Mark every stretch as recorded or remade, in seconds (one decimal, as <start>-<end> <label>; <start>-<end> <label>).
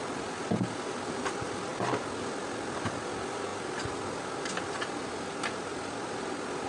0.0-1.7 remade; 1.7-2.4 recorded; 2.4-3.5 remade; 3.5-5.0 recorded; 5.0-6.7 remade